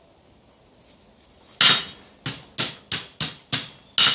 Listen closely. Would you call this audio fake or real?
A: real